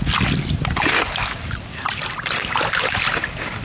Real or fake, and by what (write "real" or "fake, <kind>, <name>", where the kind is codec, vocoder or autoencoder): real